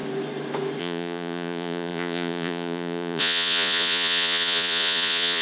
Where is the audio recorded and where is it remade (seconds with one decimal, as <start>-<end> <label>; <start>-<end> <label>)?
0.0-0.8 recorded; 0.8-5.4 remade